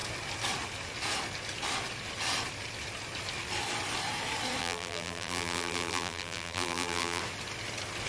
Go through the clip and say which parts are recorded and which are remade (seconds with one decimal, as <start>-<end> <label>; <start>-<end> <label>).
0.0-4.6 recorded; 4.6-7.2 remade; 7.2-8.1 recorded